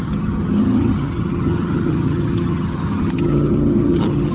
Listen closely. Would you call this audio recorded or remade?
remade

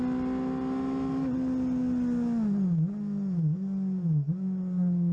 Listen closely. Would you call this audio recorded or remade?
recorded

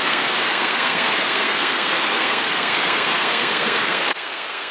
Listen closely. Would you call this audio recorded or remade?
remade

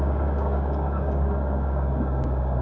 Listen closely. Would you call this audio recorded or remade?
remade